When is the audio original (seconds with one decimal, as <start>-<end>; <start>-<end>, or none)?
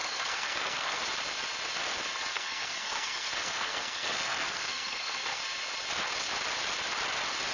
1.0-2.3; 5.4-7.5